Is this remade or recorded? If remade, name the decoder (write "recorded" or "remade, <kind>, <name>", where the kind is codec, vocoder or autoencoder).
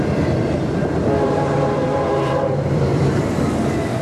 remade, vocoder, BigVGAN v2